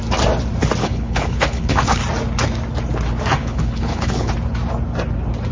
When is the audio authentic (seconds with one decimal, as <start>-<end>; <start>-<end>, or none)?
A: 0.0-0.8; 2.0-3.4; 4.3-5.5